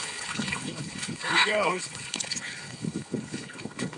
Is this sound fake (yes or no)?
yes